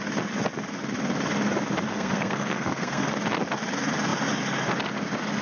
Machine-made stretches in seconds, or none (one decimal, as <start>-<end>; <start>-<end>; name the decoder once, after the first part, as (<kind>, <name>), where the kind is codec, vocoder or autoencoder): 1.9-3.1 (codec, SNAC)